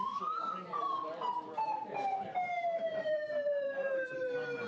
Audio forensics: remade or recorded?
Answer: remade